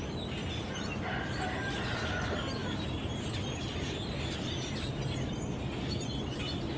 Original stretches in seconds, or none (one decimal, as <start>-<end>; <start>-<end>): 0.0-6.8